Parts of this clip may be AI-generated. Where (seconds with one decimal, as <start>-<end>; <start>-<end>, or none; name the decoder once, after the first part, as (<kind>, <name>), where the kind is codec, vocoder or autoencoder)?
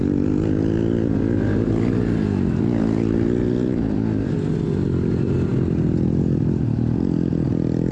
5.5-6.6 (vocoder, BigVGAN v2)